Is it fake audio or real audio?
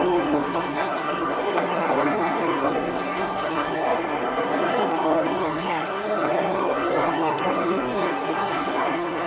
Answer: fake